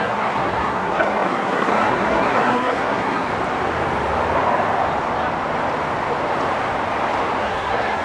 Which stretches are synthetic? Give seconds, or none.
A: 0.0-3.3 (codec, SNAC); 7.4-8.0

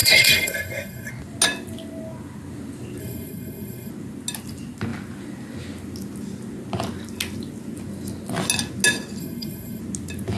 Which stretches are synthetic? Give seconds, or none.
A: 0.0-1.1 (codec, SNAC); 3.0-3.9; 9.2-9.8

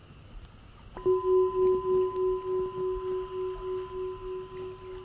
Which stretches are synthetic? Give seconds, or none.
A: none

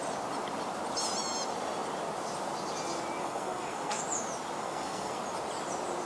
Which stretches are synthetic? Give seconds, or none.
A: 3.2-4.0 (codec, SNAC); 4.6-5.2